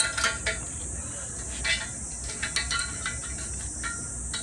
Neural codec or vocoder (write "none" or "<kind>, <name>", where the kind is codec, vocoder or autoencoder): none